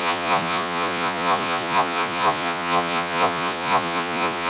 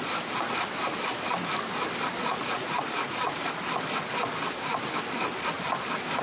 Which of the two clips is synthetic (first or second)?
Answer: first